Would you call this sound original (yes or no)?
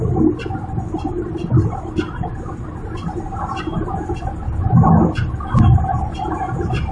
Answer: yes